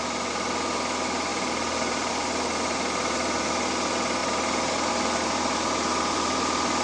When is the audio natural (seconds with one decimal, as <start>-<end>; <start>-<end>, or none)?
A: 0.0-6.8